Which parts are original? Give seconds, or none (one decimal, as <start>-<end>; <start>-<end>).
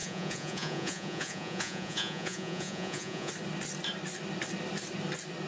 3.3-5.5